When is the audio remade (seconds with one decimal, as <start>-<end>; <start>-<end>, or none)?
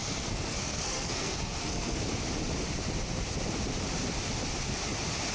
0.0-2.0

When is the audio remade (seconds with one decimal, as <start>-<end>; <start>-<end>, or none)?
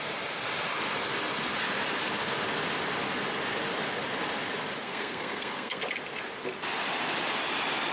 4.8-5.8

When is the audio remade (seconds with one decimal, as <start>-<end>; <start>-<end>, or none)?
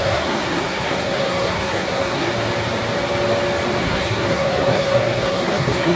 0.0-2.3; 3.8-6.0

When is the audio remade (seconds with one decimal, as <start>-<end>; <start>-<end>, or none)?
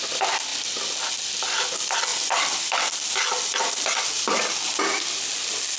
none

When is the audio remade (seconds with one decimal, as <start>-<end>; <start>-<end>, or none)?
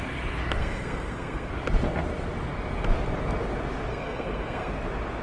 0.6-1.5; 3.9-4.7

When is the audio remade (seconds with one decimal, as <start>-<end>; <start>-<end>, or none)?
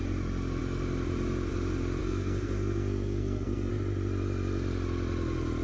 2.0-3.7